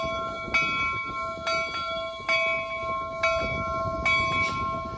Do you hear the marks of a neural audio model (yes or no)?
no